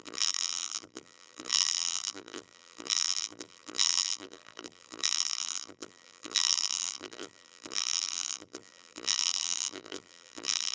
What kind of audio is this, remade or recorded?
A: remade